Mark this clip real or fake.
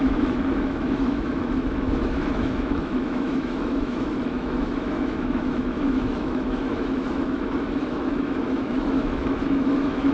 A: fake